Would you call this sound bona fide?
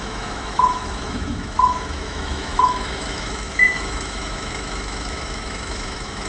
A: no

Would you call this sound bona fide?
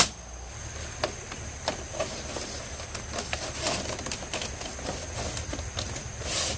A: yes